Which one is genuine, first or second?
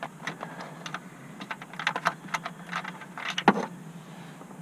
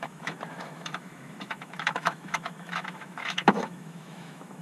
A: first